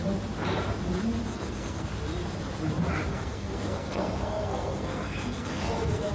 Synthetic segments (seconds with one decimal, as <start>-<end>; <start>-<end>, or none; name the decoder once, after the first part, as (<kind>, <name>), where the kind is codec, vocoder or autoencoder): 1.3-1.9 (codec, SNAC); 3.1-6.1